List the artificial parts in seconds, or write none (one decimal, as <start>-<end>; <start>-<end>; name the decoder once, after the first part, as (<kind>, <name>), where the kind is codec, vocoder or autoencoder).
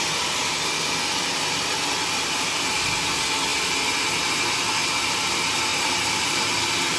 5.7-6.5 (vocoder, BigVGAN v2)